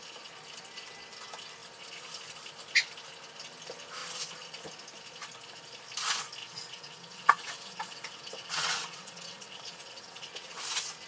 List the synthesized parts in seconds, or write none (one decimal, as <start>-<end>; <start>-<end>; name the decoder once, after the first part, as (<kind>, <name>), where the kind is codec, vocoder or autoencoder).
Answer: 6.4-10.6 (vocoder, WaveNeXt)